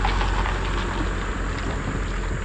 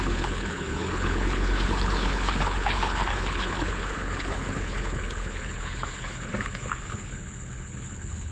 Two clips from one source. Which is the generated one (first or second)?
second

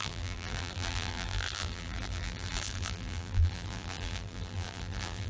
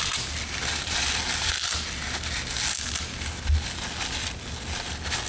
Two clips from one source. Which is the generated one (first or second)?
first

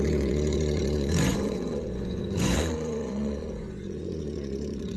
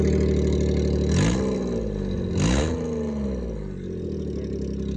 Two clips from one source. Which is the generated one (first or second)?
first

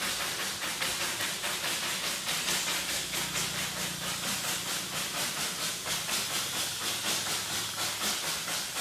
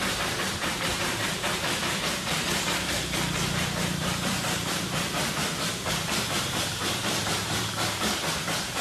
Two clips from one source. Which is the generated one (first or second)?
second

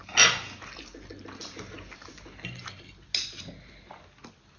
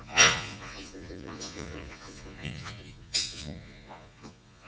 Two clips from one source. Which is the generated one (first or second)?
second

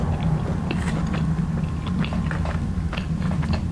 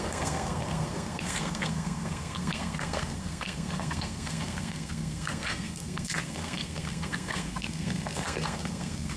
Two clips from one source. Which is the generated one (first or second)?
second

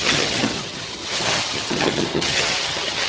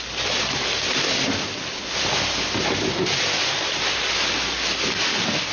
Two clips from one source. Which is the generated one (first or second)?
first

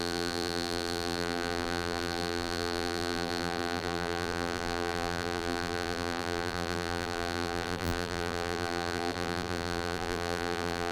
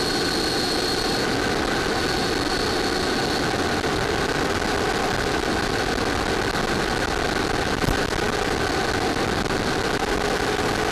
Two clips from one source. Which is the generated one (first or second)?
first